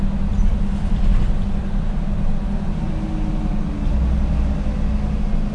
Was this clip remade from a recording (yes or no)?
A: no